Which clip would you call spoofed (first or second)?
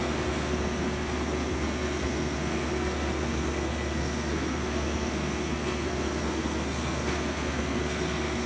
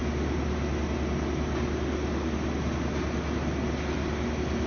first